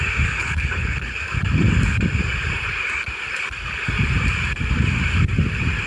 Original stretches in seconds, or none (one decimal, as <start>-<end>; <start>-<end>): 0.0-0.4; 1.1-5.9